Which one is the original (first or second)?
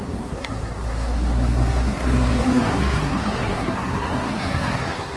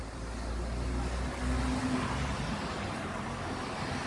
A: second